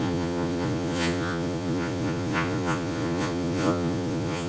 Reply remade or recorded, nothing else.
remade